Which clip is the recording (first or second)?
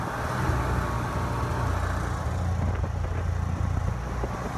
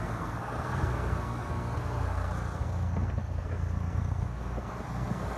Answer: first